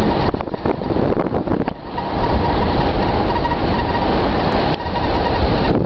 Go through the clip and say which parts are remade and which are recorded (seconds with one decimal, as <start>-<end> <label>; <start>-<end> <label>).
0.0-1.5 remade; 1.5-4.1 recorded; 4.1-5.9 remade